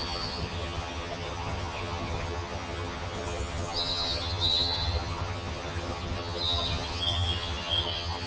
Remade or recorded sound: remade